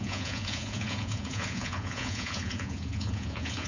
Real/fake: fake